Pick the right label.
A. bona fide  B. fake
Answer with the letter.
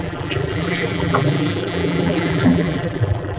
B